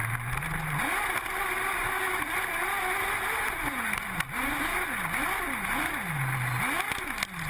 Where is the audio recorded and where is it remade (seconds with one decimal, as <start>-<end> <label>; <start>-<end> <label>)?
0.0-7.5 recorded